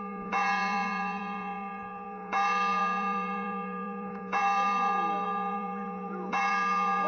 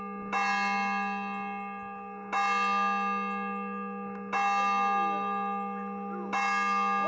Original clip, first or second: second